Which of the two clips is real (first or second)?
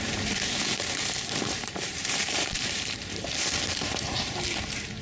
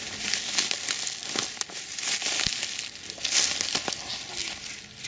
second